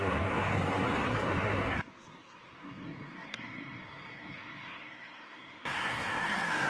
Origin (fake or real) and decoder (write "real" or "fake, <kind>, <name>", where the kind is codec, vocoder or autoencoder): fake, codec, SNAC